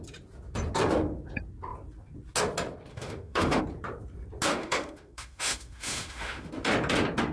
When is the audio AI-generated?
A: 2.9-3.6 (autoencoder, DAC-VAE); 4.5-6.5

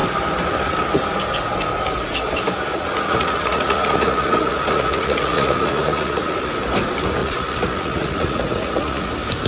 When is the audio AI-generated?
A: 2.7-6.5 (vocoder, Vocos); 7.2-9.1

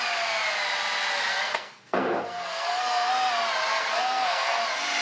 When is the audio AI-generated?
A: 1.3-3.1 (codec, SNAC); 3.7-4.6

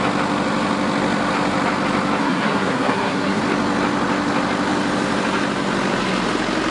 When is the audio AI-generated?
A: 2.2-3.4 (codec, SNAC)